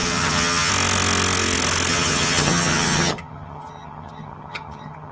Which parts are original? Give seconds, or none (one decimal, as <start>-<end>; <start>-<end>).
0.7-1.9